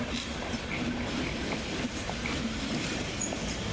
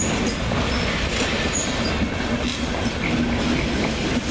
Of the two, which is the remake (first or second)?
first